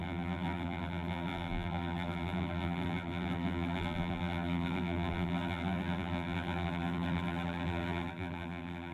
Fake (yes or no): yes